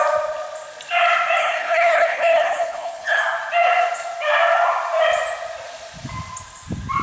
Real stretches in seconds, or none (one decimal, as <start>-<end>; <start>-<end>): 0.0-1.4; 3.2-7.0